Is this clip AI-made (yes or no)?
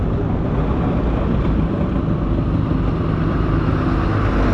no